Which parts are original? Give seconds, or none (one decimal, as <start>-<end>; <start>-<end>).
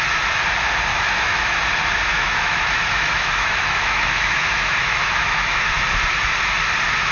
0.0-0.9; 1.6-2.1; 5.7-7.1